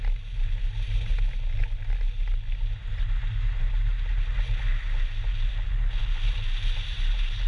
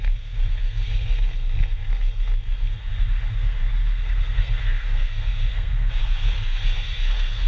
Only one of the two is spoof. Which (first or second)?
second